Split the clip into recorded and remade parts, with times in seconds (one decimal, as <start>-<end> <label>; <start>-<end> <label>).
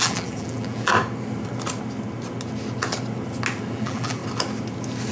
0.0-0.9 remade; 0.9-3.7 recorded; 3.7-4.2 remade; 4.2-5.1 recorded